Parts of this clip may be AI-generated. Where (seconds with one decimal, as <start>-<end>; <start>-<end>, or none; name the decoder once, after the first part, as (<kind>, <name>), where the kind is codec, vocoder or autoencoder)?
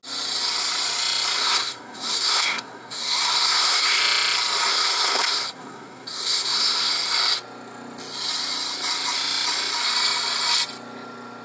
1.4-4.0 (codec, SNAC); 4.7-6.9